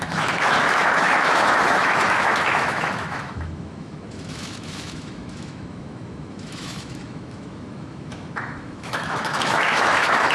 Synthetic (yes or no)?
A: yes